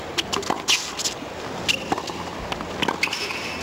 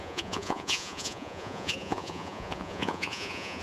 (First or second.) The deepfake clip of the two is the second